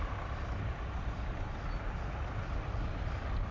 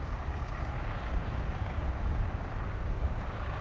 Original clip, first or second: first